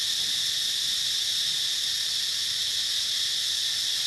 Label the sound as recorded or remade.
recorded